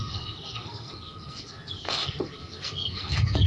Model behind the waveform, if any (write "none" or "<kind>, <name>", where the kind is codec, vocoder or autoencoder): codec, SNAC